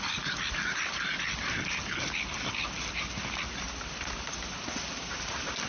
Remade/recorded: recorded